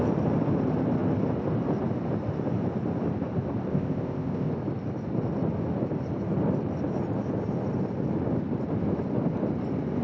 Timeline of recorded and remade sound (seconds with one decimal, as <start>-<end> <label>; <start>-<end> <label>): 0.0-3.7 recorded; 3.7-4.5 remade; 4.5-10.0 recorded